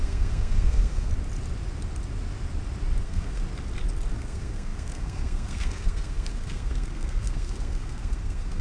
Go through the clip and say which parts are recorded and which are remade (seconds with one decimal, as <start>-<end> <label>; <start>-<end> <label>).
0.0-1.1 remade; 1.1-3.0 recorded; 3.0-3.4 remade; 3.4-4.1 recorded; 4.1-8.6 remade